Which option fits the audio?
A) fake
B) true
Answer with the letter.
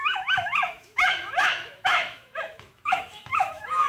A